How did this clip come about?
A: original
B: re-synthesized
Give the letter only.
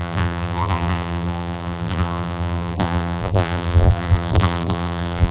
B